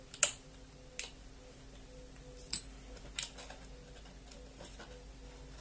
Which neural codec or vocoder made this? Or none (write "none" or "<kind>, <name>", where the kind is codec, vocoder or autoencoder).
none